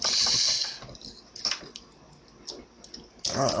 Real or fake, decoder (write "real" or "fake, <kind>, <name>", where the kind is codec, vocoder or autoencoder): real